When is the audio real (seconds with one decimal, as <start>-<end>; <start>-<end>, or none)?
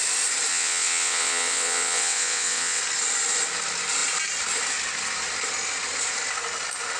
0.0-0.5; 2.8-7.0